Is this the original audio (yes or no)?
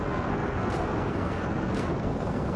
no